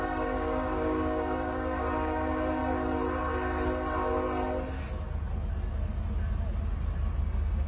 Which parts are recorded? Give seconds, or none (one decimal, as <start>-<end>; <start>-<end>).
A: 2.6-7.2